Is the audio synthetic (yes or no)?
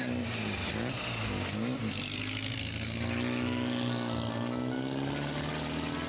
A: no